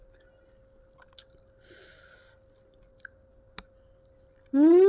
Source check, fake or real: real